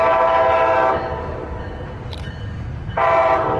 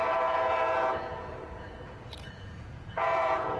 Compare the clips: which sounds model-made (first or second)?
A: second